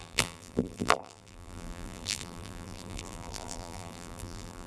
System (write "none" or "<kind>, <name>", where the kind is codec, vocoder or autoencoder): vocoder, BigVGAN v2